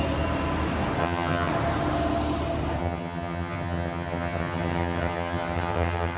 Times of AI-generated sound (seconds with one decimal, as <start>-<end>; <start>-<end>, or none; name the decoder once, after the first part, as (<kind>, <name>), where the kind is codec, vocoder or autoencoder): 1.0-1.5 (vocoder, HiFi-GAN); 2.8-6.2